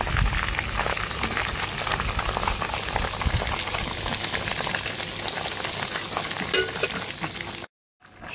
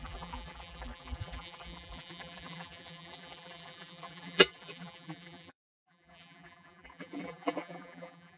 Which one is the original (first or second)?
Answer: first